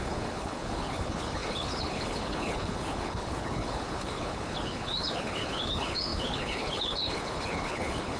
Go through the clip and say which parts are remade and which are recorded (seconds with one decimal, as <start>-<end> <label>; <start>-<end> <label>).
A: 0.0-8.2 remade